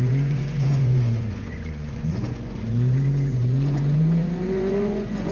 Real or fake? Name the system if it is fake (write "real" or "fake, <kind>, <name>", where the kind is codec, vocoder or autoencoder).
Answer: fake, vocoder, Vocos